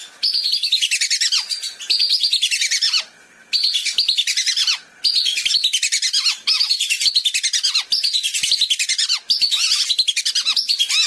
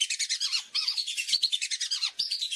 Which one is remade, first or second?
second